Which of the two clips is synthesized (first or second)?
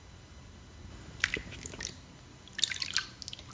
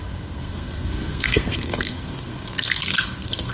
second